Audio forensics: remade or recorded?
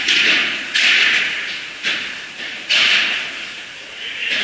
remade